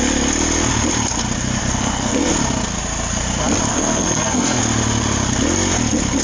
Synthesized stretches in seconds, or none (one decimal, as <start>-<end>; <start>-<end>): 1.6-2.3; 3.7-4.6